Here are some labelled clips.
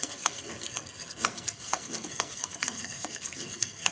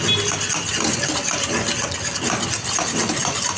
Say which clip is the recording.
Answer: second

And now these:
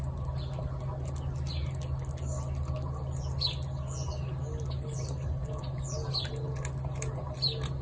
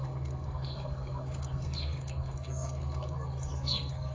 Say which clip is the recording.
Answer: first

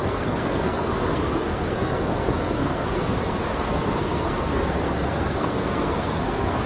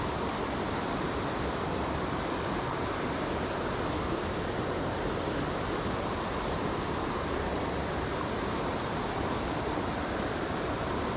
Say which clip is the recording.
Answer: second